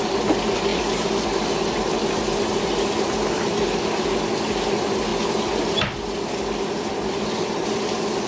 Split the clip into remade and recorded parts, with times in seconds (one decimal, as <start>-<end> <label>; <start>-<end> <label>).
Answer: 0.0-8.3 recorded